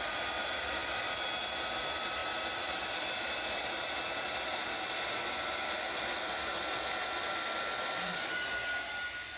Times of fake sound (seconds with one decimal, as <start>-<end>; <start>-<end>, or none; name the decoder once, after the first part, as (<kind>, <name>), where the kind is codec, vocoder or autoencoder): none